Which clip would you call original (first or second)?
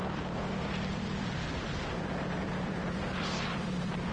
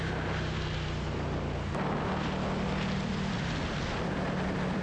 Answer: second